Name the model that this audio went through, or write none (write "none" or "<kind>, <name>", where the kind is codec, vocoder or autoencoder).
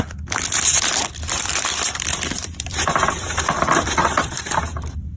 vocoder, BigVGAN v2